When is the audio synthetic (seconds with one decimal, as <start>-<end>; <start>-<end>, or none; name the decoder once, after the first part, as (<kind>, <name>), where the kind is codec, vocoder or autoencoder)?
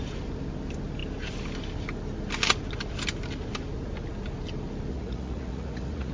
4.9-6.1 (vocoder, Vocos)